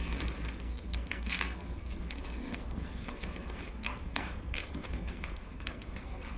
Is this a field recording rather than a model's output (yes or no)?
no